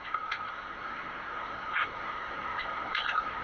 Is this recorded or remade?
remade